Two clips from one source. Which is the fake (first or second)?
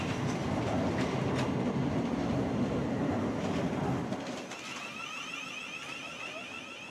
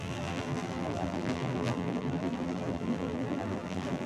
second